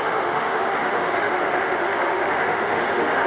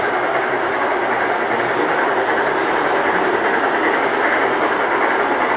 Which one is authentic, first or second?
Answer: second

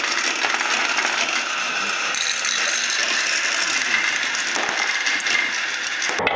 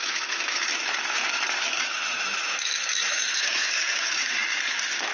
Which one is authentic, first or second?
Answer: first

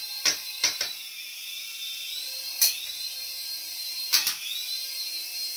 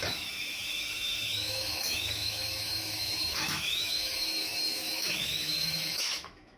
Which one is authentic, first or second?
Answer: first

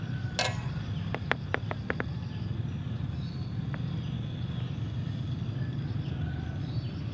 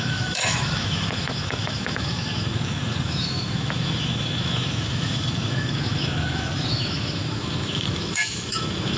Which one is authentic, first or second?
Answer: first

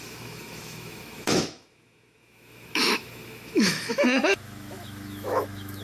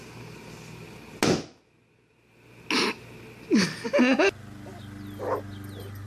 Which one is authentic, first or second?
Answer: second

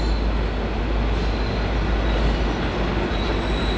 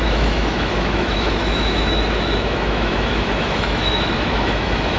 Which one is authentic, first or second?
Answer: first